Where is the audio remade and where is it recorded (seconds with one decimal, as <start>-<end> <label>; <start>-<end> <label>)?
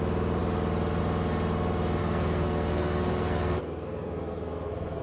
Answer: 0.0-2.0 recorded; 2.0-5.0 remade